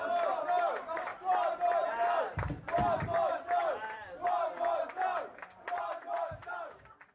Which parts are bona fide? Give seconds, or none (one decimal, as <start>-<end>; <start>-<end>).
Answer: 0.0-1.1; 2.2-3.6; 6.5-7.1